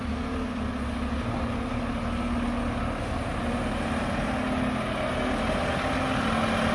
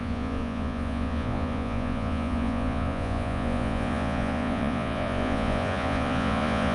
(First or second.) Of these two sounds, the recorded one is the first